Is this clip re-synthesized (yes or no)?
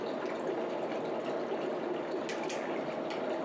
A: no